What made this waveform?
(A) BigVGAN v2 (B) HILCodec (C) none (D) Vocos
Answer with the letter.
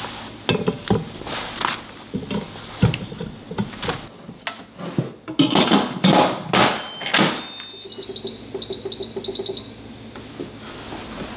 C